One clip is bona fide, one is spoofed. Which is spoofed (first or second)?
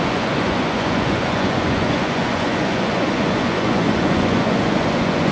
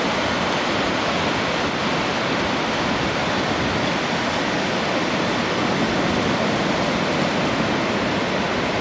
first